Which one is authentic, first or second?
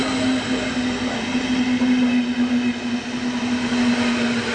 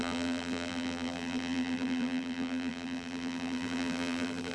first